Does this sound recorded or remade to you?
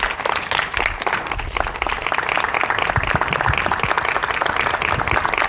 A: recorded